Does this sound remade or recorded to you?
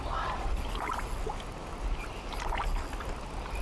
recorded